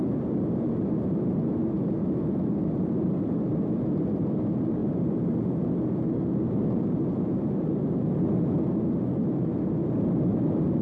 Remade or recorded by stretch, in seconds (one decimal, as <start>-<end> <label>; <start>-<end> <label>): 0.0-10.8 recorded